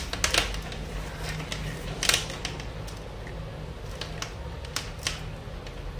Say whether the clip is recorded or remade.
recorded